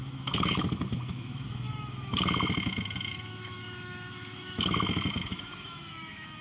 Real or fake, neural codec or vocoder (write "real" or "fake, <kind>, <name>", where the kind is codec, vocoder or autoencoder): fake, autoencoder, DAC-VAE